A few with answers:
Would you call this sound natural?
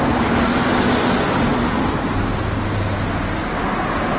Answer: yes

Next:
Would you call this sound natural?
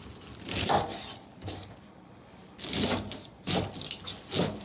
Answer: yes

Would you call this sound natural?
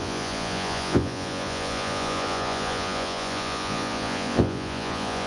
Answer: no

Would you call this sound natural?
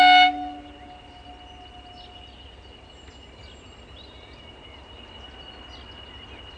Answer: yes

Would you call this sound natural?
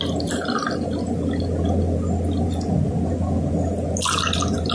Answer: yes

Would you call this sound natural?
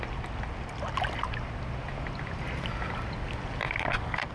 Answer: yes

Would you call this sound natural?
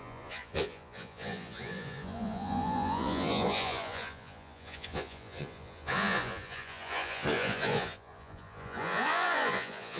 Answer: no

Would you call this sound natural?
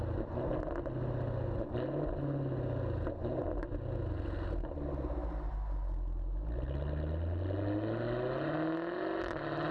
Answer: yes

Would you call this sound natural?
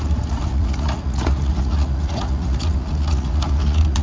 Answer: no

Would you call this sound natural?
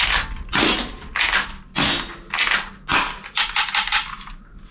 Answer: yes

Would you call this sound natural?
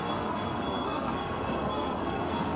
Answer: no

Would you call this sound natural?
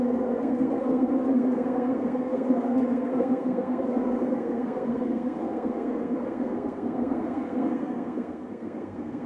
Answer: no